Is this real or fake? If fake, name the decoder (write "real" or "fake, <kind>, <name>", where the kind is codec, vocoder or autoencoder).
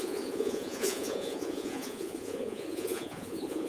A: fake, vocoder, Vocos